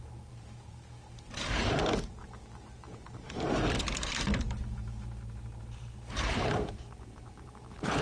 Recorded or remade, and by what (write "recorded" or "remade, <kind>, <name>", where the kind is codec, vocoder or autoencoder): remade, vocoder, BigVGAN v2